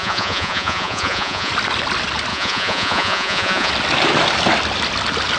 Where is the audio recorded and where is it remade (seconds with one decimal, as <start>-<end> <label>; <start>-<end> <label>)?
0.0-1.5 remade; 1.5-2.3 recorded; 2.3-3.7 remade; 3.7-5.4 recorded